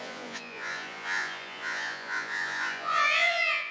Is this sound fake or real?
fake